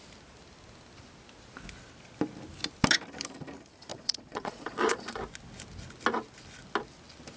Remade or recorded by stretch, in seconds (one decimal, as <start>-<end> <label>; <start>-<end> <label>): 0.0-3.9 recorded; 3.9-5.2 remade; 5.2-7.4 recorded